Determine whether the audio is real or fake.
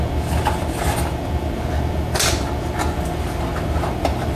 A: real